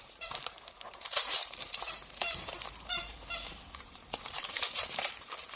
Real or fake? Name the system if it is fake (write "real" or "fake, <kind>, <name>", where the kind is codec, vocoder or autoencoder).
fake, vocoder, BigVGAN v2